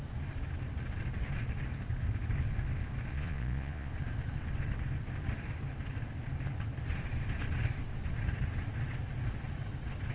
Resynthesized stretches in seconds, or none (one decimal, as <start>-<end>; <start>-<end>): 3.1-3.9